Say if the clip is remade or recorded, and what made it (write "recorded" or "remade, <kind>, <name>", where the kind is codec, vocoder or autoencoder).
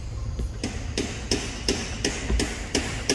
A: recorded